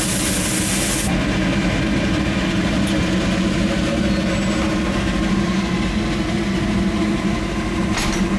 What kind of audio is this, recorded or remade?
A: recorded